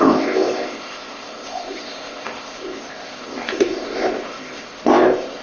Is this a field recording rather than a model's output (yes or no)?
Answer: no